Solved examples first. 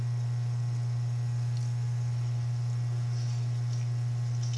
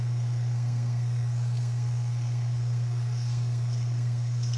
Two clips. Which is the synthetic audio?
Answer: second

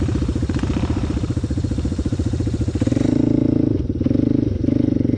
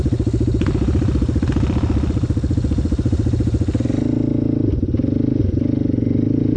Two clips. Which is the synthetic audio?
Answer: first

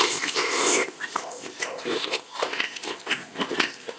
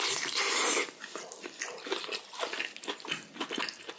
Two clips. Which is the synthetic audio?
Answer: first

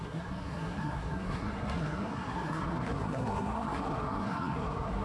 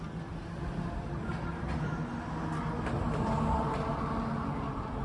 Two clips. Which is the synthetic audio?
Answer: first